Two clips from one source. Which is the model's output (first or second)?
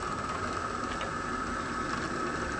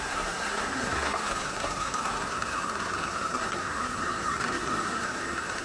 second